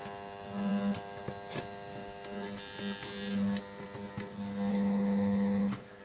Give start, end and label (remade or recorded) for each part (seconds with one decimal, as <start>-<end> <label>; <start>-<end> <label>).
0.0-4.7 recorded; 4.7-6.0 remade